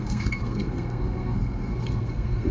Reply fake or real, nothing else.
fake